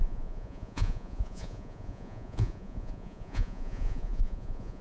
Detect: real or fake fake